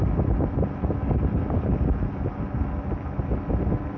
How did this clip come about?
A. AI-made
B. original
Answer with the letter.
B